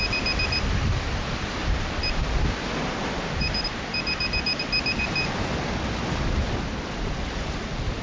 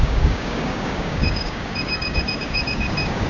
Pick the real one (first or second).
first